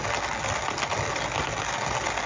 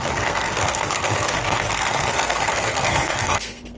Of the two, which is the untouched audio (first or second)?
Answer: first